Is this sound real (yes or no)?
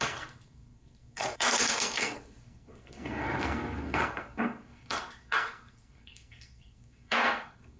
no